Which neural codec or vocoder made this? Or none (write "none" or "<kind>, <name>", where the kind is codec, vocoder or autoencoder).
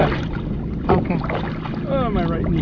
none